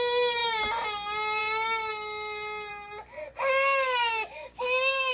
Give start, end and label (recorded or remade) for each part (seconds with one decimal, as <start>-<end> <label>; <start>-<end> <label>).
0.0-4.0 recorded; 4.0-5.1 remade